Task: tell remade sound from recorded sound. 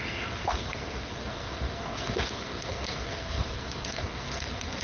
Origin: remade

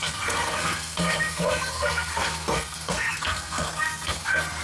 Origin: remade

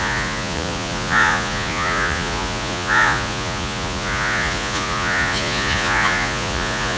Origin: remade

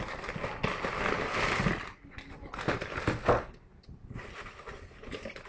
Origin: recorded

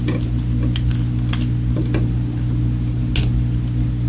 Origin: recorded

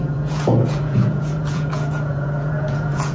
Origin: remade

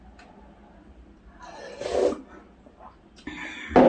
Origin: recorded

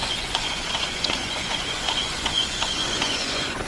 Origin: remade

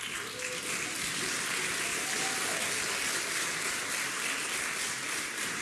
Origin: recorded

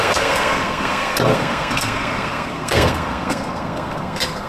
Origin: remade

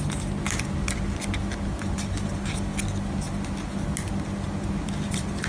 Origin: recorded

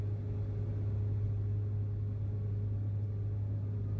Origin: recorded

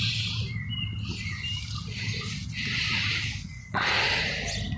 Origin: recorded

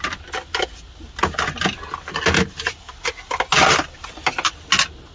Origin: recorded